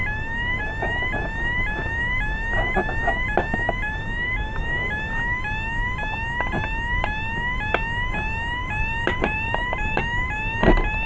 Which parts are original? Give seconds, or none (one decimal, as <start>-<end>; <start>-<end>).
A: 0.0-8.6; 10.0-11.1